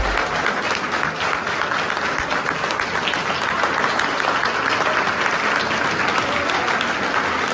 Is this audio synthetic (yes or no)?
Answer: no